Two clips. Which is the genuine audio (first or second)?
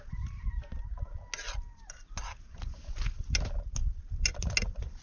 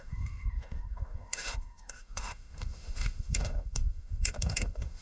first